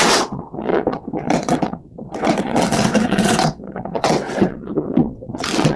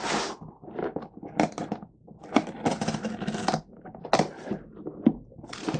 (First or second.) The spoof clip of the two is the first